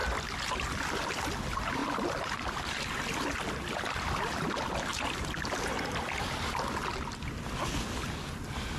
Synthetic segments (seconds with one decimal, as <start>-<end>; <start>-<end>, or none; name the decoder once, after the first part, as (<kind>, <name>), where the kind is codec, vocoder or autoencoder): none